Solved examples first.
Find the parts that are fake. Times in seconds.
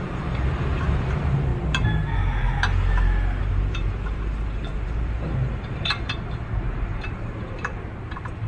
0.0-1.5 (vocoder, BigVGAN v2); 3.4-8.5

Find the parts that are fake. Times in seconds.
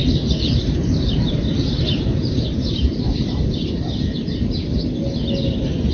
0.0-3.5 (vocoder, BigVGAN v2)